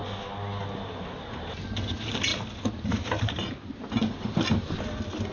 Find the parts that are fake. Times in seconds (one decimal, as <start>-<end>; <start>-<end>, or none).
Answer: none